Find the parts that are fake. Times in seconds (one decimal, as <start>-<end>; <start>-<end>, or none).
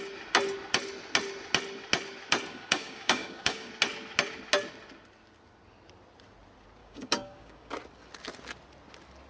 2.5-3.7; 6.8-7.7